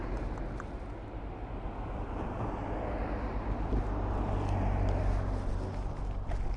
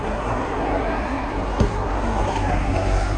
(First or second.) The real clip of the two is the first